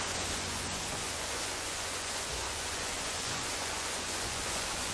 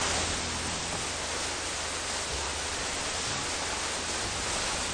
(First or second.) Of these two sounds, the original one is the second